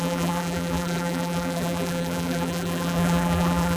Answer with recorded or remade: remade